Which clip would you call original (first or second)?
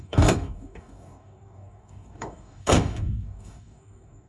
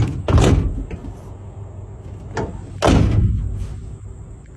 second